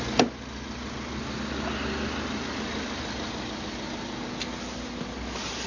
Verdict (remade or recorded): recorded